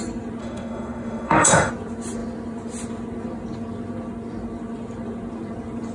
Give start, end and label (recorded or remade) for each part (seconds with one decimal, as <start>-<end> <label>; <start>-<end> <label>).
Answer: 0.0-0.4 recorded; 0.4-1.7 remade; 1.7-5.9 recorded